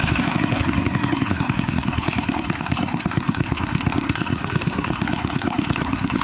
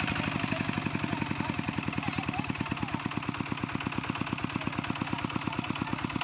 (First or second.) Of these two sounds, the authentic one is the second